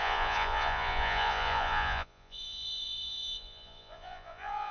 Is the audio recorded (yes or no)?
no